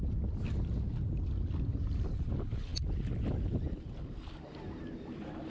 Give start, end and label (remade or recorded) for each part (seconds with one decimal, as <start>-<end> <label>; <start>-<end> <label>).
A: 0.0-1.7 recorded; 1.7-2.3 remade; 2.3-5.5 recorded